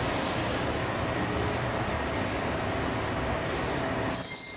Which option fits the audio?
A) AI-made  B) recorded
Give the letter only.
B